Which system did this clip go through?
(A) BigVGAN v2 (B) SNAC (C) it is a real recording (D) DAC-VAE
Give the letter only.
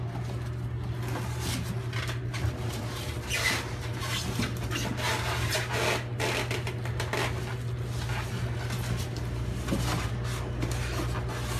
C